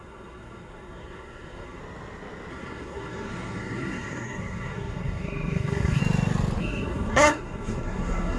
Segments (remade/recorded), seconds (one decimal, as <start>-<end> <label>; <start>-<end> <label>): 0.0-1.8 remade; 1.8-2.5 recorded; 2.5-6.0 remade; 6.0-6.6 recorded; 6.6-8.4 remade